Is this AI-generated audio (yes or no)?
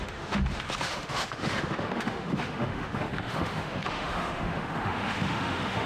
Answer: yes